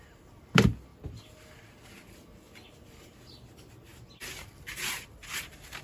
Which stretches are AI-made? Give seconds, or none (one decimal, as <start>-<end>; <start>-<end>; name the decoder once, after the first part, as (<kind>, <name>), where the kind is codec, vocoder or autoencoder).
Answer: none